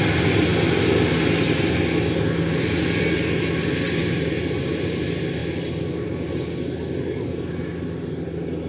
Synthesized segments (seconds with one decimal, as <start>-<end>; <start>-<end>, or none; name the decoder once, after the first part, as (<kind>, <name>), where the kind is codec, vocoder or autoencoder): 4.0-5.0 (vocoder, BigVGAN v2)